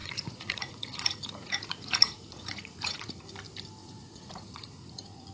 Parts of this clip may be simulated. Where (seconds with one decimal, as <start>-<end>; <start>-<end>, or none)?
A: 0.0-3.2; 3.8-5.3